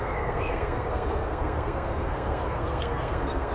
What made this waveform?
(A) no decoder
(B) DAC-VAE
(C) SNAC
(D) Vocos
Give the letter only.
C